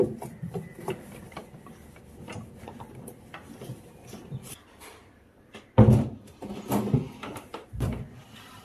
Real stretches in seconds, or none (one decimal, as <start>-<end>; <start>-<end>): 1.4-2.4